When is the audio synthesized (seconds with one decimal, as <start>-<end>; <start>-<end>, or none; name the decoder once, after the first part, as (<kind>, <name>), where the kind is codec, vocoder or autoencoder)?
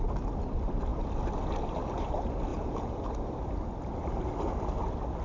2.5-3.0 (vocoder, Vocos)